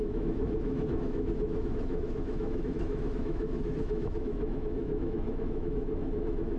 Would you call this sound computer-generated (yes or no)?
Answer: yes